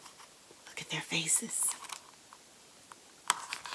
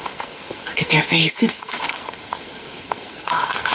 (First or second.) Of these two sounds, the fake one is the second